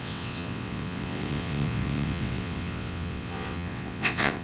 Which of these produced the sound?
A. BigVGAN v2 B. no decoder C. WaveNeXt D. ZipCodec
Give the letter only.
C